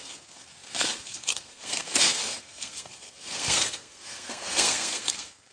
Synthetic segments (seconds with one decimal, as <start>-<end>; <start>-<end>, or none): 0.0-5.5